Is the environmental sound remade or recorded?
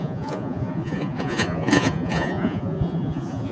remade